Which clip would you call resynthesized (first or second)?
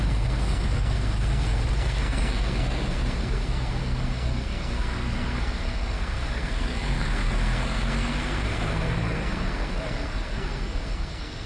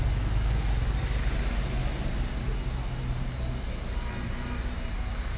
first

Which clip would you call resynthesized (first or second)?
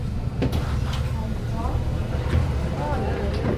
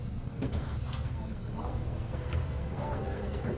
second